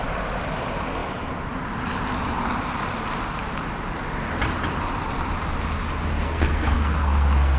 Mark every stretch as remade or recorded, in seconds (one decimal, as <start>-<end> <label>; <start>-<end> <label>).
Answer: 0.0-6.2 recorded; 6.2-7.6 remade